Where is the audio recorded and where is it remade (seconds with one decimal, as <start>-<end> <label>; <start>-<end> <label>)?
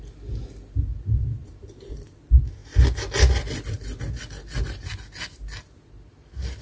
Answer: 0.0-6.6 recorded